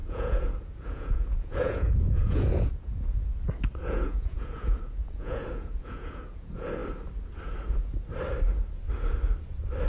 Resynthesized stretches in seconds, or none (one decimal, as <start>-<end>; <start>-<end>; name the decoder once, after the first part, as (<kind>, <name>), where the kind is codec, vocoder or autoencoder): 0.0-3.3 (vocoder, Vocos); 3.8-6.8